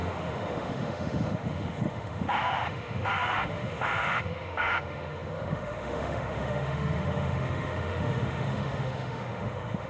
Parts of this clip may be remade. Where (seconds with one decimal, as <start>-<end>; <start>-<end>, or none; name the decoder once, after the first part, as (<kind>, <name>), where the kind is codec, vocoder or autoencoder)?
0.0-9.9 (autoencoder, DAC-VAE)